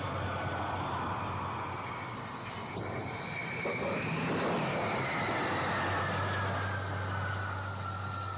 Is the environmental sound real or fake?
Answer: real